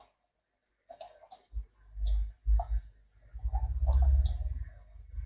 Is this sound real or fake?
real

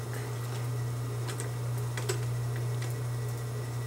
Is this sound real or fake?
real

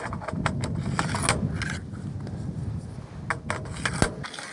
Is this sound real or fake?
real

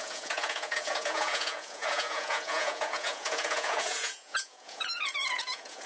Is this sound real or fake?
fake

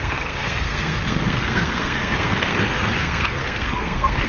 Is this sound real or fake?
fake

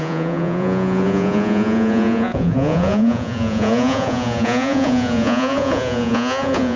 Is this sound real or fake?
fake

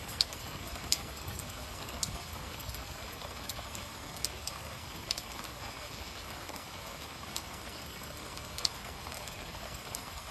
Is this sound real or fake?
fake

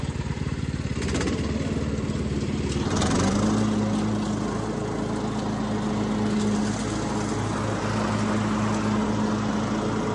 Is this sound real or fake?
real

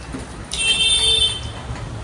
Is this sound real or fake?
real